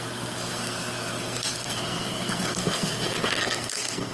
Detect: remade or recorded remade